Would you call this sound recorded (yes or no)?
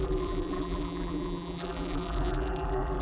no